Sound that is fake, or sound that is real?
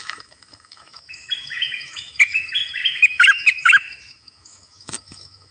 fake